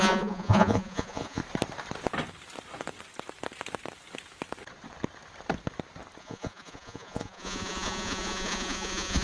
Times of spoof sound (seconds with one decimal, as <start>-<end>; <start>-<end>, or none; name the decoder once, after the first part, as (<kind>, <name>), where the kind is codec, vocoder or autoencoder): 0.0-1.4 (vocoder, Vocos); 6.2-9.2